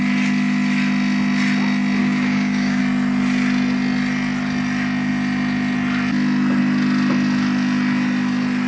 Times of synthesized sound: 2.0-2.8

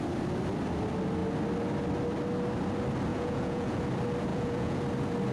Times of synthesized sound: 3.1-3.8; 4.3-4.8

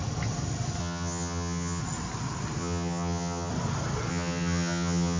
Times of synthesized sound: 0.8-1.8; 2.6-3.5; 4.1-5.2

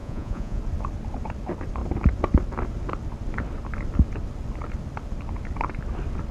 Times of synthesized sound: 0.0-0.6

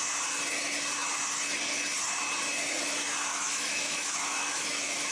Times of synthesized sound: 3.3-5.1

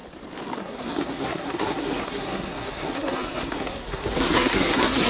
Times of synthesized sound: 0.6-5.1

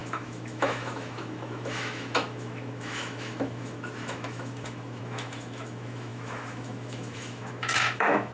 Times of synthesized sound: 0.0-8.3

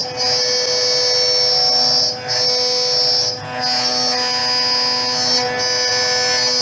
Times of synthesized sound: none